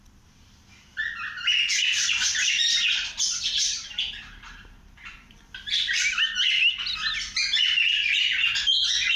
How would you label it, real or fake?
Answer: real